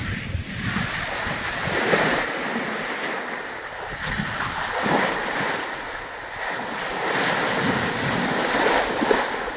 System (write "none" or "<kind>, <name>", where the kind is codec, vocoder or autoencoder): none